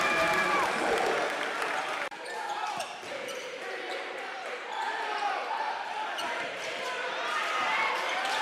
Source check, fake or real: fake